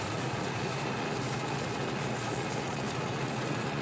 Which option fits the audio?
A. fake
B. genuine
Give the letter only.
A